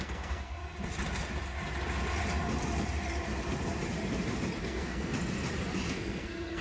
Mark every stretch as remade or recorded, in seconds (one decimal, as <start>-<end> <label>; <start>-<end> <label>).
0.0-0.6 remade; 0.6-4.6 recorded; 4.6-5.1 remade; 5.1-5.9 recorded; 5.9-6.6 remade